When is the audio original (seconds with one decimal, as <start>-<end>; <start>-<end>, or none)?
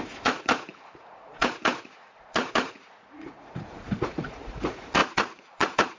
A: none